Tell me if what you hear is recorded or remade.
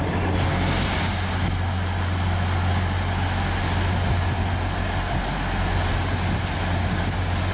recorded